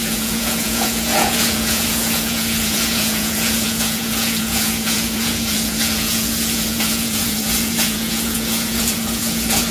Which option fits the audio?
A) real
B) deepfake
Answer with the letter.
B